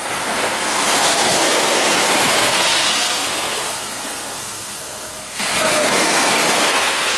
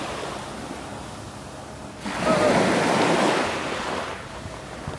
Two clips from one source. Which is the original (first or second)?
second